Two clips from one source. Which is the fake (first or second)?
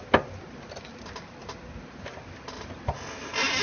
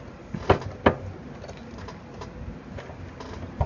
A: first